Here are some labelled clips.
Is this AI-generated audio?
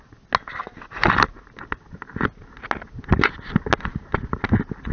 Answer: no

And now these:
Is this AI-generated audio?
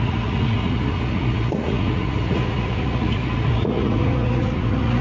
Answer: yes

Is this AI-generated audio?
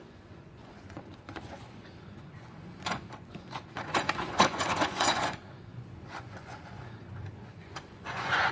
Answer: yes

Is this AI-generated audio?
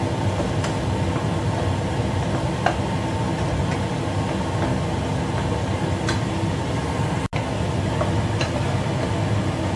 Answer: no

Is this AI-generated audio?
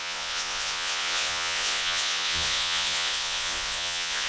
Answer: yes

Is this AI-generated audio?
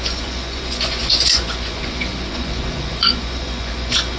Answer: yes